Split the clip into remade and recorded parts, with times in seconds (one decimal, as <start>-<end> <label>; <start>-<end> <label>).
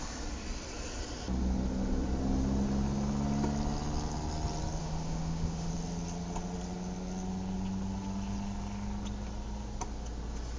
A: 0.0-4.8 recorded; 4.8-5.7 remade; 5.7-10.6 recorded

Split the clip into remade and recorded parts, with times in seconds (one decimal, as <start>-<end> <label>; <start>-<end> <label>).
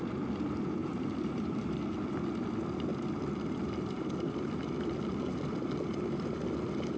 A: 0.0-0.8 recorded; 0.8-1.8 remade; 1.8-7.0 recorded